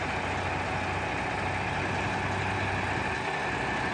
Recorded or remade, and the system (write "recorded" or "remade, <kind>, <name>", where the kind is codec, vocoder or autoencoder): recorded